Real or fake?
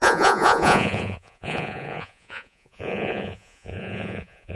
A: fake